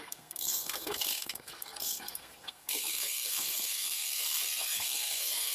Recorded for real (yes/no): no